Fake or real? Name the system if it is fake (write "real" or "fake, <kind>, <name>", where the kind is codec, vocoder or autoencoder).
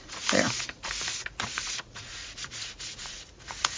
fake, vocoder, Vocos